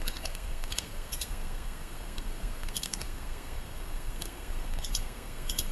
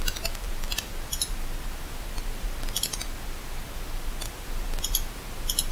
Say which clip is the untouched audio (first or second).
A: second